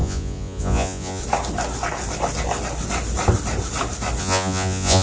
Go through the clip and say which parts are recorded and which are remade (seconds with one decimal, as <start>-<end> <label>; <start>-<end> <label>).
0.0-1.2 remade; 1.2-4.2 recorded; 4.2-5.0 remade